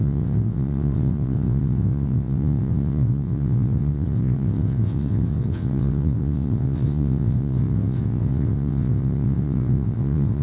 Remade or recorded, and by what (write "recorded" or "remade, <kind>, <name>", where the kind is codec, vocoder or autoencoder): remade, vocoder, WaveNeXt